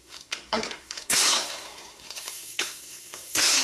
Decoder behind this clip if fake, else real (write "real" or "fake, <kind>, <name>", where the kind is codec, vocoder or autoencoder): fake, codec, SNAC